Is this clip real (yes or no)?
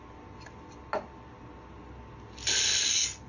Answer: yes